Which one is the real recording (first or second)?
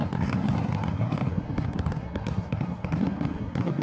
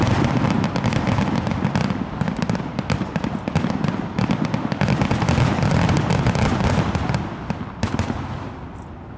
second